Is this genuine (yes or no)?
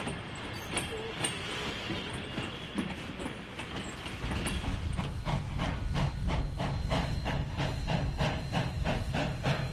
yes